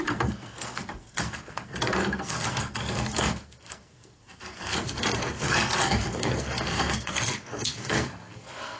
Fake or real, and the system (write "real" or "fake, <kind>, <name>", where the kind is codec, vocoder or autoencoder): fake, codec, SNAC